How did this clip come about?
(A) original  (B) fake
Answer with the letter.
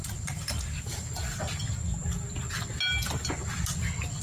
A